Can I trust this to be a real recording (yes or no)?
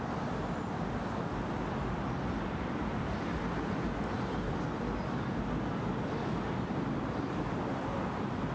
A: yes